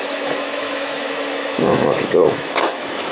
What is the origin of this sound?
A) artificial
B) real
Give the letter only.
A